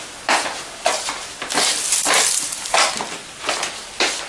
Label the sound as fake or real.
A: real